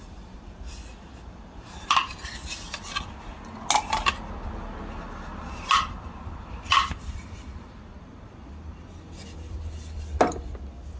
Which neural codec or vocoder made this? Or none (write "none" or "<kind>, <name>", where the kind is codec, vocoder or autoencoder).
none